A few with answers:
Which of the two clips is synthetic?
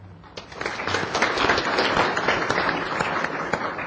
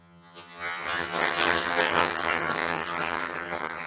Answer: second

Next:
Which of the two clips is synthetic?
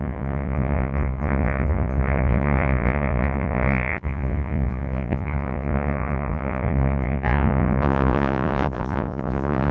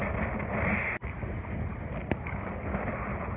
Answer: first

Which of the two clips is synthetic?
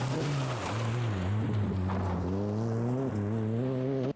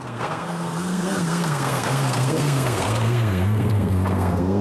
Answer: second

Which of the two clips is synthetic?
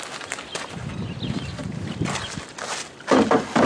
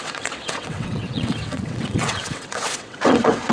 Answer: second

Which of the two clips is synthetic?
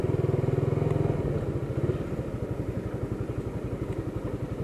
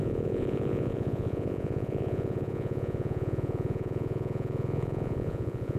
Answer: second